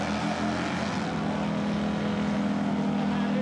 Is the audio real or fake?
real